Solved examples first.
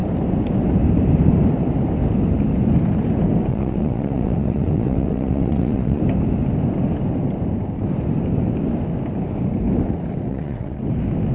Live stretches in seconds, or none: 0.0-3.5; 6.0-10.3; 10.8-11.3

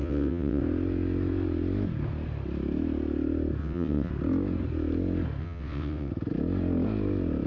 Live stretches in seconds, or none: 0.6-3.6; 4.1-5.4; 6.1-7.5

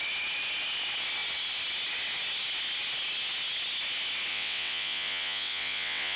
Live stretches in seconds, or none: 0.0-4.3

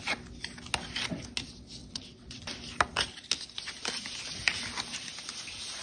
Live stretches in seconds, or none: 0.0-1.8; 2.4-5.8

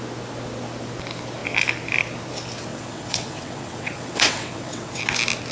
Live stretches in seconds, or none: 0.0-2.7; 5.0-5.5

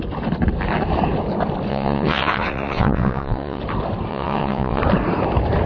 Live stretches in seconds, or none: 0.0-1.7; 3.6-4.1; 4.8-5.7

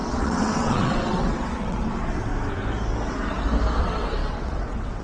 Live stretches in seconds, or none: 2.3-3.8

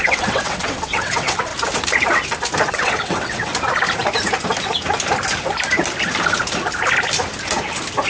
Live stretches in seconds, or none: 1.5-2.7; 3.5-8.1